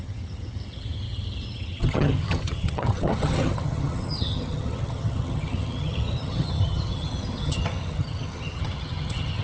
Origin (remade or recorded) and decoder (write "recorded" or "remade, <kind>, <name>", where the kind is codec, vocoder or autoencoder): remade, vocoder, HiFi-GAN